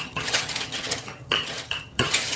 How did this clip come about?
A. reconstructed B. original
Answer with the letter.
A